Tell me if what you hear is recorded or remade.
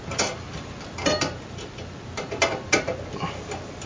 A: recorded